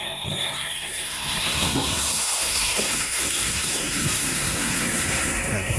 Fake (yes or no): yes